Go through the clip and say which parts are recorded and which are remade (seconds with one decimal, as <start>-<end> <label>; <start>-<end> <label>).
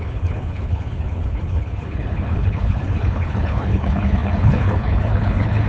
0.0-5.7 remade